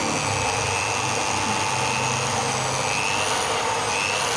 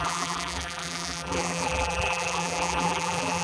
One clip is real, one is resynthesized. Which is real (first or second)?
first